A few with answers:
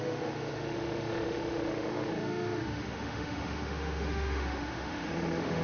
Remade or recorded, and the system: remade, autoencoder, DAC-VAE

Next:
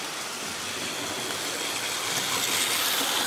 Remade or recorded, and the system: recorded